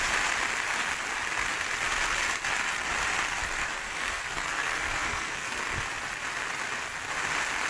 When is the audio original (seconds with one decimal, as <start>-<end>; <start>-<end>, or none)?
0.0-3.6; 5.6-7.7